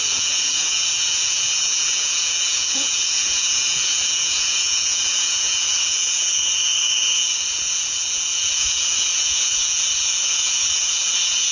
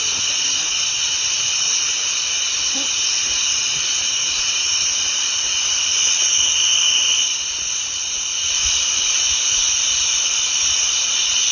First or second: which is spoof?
first